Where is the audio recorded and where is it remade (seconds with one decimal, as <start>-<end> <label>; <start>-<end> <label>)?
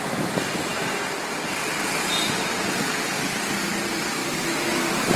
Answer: 0.0-4.2 recorded; 4.2-4.7 remade; 4.7-5.2 recorded